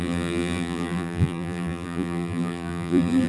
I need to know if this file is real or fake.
fake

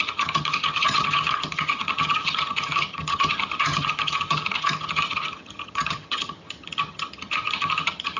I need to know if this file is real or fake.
fake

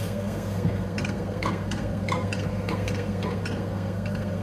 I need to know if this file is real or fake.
fake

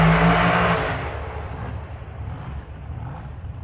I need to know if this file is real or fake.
real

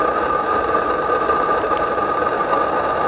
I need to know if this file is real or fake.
real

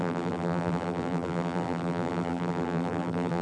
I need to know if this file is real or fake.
fake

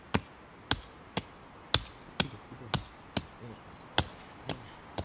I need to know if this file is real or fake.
real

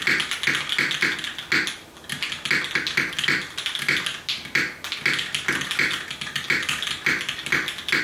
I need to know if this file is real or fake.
real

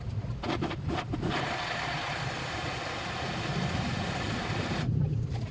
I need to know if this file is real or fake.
fake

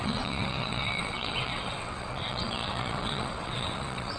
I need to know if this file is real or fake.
fake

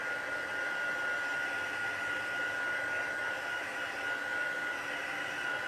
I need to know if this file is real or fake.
real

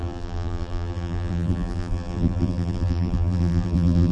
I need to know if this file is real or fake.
fake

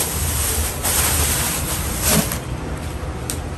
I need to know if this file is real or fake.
real